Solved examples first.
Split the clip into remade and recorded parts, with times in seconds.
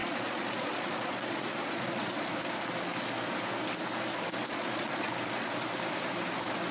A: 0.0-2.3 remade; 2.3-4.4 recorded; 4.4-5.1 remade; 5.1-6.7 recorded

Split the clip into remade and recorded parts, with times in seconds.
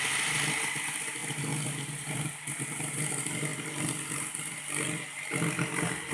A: 0.0-6.1 recorded